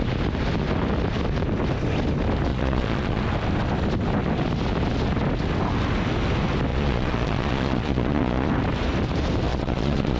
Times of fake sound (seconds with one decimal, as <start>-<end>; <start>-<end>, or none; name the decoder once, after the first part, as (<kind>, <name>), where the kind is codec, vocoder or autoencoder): 2.5-3.2 (vocoder, Vocos); 6.7-8.5; 9.5-10.2